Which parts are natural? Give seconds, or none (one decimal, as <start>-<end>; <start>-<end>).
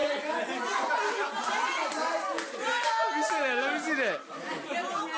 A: 0.0-5.2